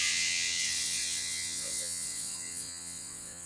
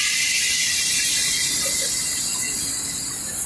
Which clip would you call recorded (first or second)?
second